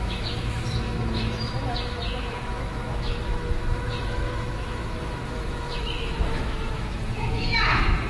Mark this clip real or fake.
fake